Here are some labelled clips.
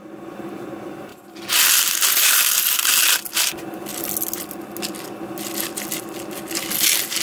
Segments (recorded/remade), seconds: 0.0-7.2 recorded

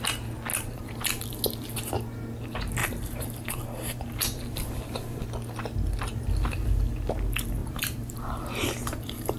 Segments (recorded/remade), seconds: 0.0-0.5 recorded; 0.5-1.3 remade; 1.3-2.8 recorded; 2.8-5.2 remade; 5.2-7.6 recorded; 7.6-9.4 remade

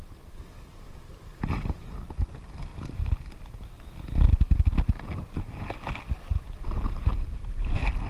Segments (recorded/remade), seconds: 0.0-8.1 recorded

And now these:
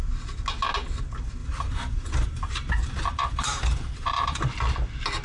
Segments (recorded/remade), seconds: 0.0-1.4 recorded; 1.4-4.5 remade; 4.5-5.2 recorded